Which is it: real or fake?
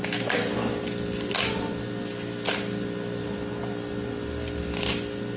real